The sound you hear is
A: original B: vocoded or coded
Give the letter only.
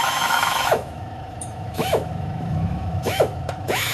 B